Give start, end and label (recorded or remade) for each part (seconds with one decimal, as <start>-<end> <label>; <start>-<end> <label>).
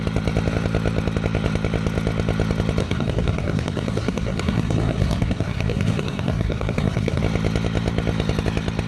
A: 0.0-2.8 recorded; 2.8-7.2 remade; 7.2-8.9 recorded